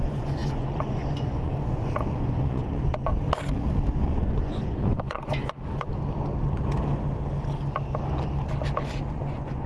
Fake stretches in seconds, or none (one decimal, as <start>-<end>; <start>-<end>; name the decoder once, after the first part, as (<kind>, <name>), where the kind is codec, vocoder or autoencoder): 0.0-3.1 (vocoder, Vocos); 3.9-5.9; 9.1-9.7